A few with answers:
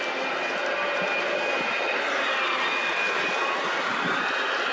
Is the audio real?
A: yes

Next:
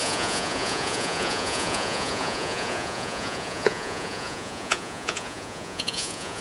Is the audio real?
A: no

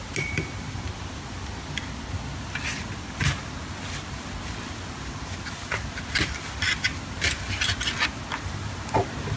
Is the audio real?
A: yes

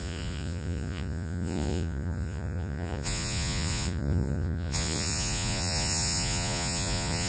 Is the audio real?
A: no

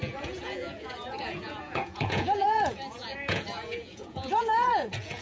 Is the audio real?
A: no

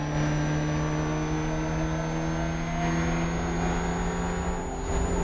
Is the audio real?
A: yes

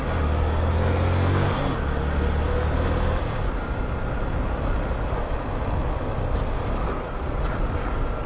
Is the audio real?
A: yes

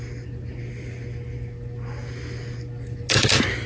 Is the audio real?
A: yes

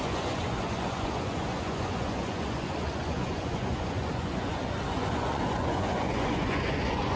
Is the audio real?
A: no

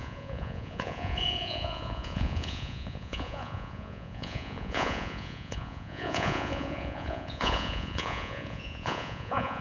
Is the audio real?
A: no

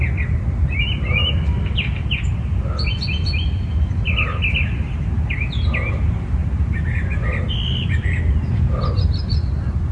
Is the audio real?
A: yes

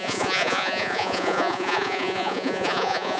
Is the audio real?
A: no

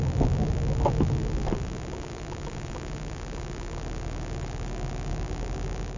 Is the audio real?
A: yes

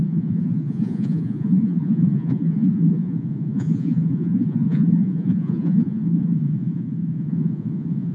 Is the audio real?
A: no